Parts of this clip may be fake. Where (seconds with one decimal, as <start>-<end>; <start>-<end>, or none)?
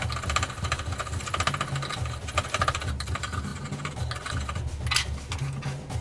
none